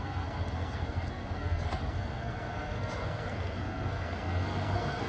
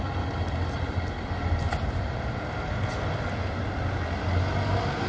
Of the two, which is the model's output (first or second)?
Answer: first